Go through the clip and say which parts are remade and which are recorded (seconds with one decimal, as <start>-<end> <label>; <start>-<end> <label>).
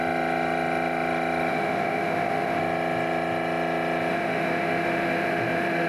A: 0.0-1.5 recorded; 1.5-2.6 remade; 2.6-4.1 recorded; 4.1-5.9 remade